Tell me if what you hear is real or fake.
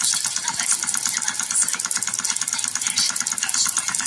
real